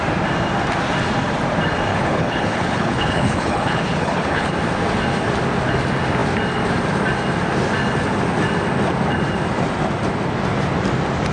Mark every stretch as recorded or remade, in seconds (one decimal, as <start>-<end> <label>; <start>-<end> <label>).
0.0-1.9 recorded; 1.9-4.5 remade; 4.5-11.3 recorded

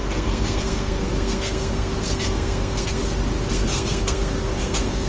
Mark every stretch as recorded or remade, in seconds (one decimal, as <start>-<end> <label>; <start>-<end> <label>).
0.0-3.0 remade; 3.0-3.5 recorded; 3.5-5.1 remade

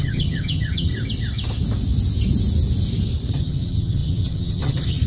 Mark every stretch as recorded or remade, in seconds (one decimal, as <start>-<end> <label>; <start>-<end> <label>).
0.0-0.9 remade; 0.9-3.3 recorded; 3.3-5.1 remade

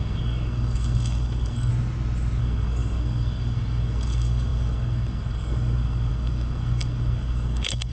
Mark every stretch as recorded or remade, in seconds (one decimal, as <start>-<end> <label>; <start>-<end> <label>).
0.0-1.7 remade; 1.7-2.4 recorded; 2.4-7.9 remade